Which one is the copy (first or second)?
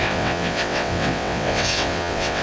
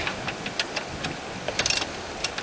first